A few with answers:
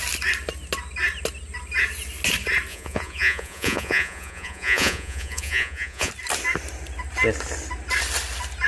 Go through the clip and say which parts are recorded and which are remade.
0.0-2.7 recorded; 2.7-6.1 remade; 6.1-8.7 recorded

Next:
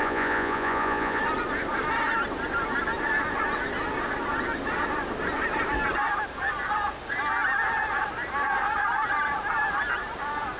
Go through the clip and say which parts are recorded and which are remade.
0.0-1.2 remade; 1.2-10.6 recorded

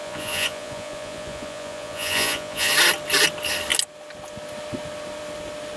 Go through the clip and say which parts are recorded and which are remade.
0.0-2.7 remade; 2.7-5.8 recorded

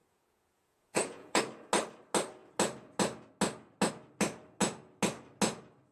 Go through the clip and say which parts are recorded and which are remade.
0.0-1.4 remade; 1.4-5.9 recorded

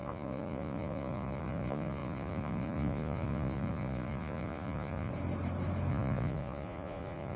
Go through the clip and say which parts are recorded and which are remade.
0.0-5.1 remade; 5.1-5.9 recorded; 5.9-7.4 remade